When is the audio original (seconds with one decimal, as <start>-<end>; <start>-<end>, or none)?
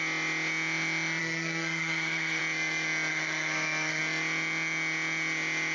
0.0-1.2; 2.4-3.1; 4.0-5.7